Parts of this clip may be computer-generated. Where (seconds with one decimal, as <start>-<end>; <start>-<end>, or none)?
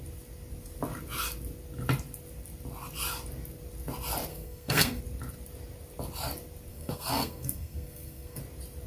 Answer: 4.3-5.0; 6.7-8.4